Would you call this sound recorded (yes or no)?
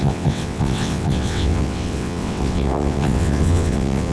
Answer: no